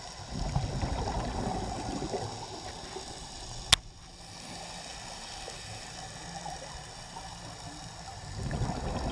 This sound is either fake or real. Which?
real